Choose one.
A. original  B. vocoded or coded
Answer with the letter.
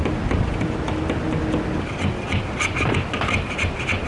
A